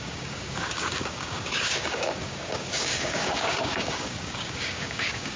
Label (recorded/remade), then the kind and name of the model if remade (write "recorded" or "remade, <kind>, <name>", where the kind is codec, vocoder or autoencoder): remade, codec, DAC